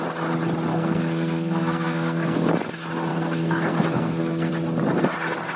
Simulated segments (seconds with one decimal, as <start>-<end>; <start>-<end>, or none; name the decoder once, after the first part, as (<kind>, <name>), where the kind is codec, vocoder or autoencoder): 0.7-2.5 (codec, SNAC); 3.1-4.5